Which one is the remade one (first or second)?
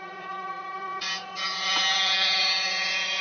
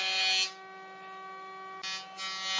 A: first